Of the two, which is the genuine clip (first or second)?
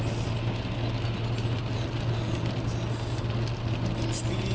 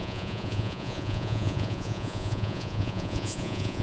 first